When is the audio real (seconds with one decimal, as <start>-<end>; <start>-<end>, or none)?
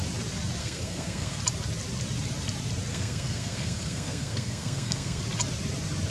0.0-0.6; 1.4-2.9; 5.2-6.1